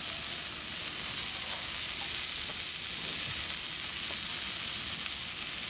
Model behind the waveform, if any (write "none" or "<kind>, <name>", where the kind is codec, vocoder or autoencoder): none